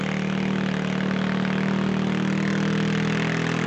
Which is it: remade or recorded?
recorded